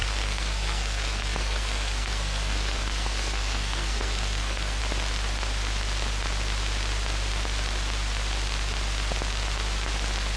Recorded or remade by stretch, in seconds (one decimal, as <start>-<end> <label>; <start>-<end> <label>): 0.0-4.8 remade; 4.8-10.4 recorded